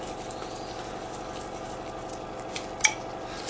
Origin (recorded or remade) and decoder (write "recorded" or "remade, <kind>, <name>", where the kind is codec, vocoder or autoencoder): recorded